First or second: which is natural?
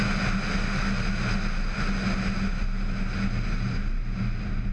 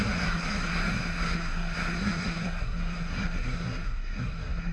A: first